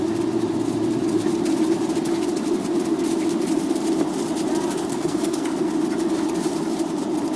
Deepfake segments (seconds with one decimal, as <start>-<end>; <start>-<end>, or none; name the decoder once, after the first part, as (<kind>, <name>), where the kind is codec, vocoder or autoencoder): 4.9-5.7 (codec, SNAC)